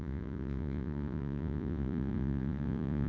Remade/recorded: remade